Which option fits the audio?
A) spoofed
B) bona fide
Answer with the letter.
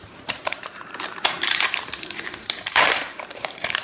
A